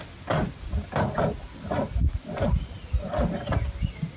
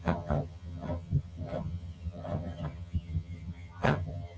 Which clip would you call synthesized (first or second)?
second